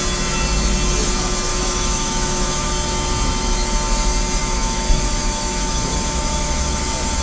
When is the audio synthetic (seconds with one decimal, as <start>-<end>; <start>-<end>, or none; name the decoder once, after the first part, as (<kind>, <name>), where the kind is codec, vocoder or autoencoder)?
1.5-2.7 (autoencoder, DAC-VAE); 4.4-6.8